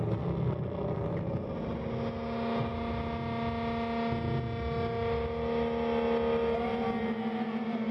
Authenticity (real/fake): real